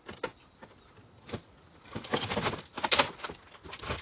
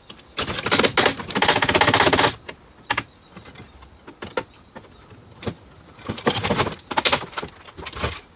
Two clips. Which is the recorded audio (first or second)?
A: second